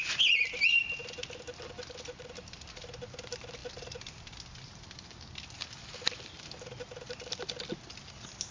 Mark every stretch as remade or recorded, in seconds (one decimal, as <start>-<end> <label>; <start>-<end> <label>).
0.0-8.5 recorded